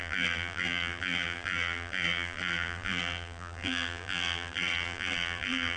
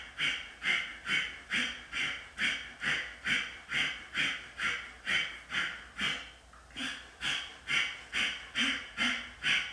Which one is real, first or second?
second